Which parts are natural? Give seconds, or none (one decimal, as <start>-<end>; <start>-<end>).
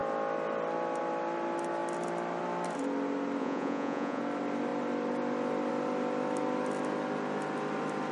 0.0-3.4; 4.2-8.1